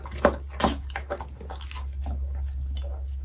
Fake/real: real